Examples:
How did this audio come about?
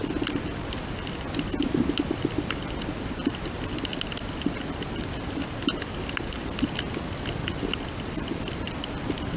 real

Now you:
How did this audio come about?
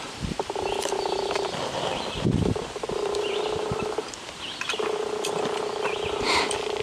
fake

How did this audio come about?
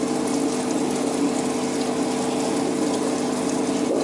real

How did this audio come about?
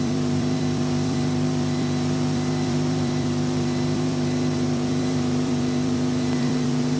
fake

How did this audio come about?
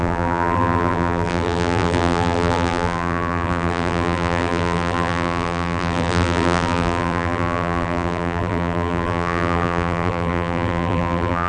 fake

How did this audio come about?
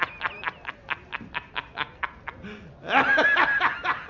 real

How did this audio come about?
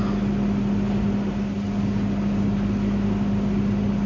fake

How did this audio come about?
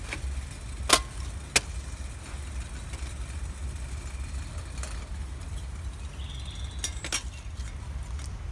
real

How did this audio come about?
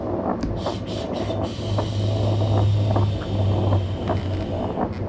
real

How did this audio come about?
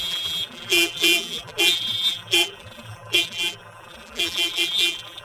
fake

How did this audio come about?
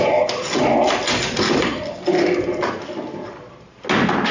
real